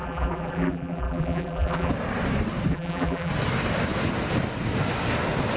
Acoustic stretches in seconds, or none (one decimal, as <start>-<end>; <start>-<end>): 1.9-2.7; 3.3-5.6